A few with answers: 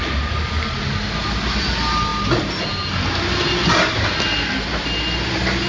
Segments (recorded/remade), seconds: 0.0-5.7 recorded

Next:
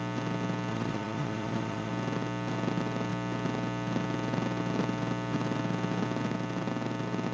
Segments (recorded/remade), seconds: 0.0-0.7 recorded; 0.7-1.9 remade; 1.9-7.3 recorded

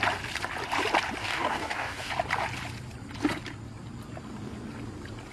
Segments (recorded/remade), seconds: 0.0-1.2 recorded; 1.2-2.1 remade; 2.1-5.3 recorded

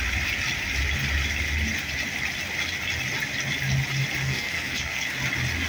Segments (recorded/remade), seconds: 0.0-4.2 recorded; 4.2-5.1 remade; 5.1-5.7 recorded

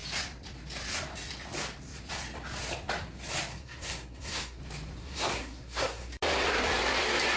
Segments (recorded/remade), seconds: 0.0-3.5 recorded; 3.5-4.6 remade; 4.6-5.0 recorded; 5.0-6.1 remade; 6.1-7.4 recorded

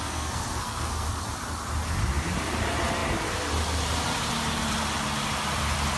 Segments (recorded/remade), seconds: 0.0-1.1 remade; 1.1-6.0 recorded